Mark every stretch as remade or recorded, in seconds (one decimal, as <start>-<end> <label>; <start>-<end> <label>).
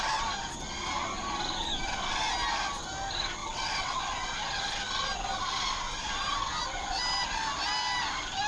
0.0-3.4 recorded; 3.4-4.0 remade; 4.0-8.5 recorded